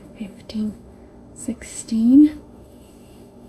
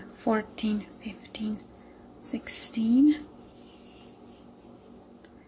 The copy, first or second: first